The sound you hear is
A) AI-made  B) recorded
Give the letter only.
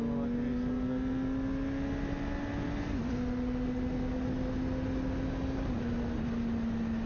B